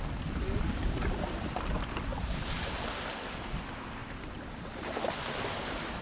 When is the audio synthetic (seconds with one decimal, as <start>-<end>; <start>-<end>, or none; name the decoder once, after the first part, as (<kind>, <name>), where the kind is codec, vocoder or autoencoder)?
0.8-1.5 (vocoder, BigVGAN v2); 2.1-2.9; 4.0-5.0